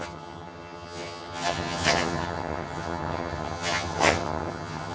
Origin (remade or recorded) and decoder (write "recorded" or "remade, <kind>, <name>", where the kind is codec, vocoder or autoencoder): remade, vocoder, HiFi-GAN